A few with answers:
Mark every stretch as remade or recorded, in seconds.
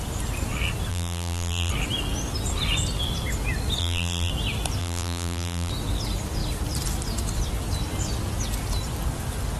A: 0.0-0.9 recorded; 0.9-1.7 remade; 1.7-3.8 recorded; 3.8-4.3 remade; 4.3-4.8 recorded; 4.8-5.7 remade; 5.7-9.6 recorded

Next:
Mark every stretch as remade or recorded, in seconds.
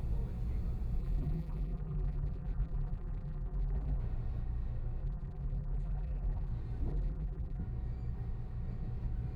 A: 0.0-1.0 recorded; 1.0-4.0 remade; 4.0-5.0 recorded; 5.0-6.5 remade; 6.5-6.9 recorded; 6.9-7.6 remade; 7.6-9.4 recorded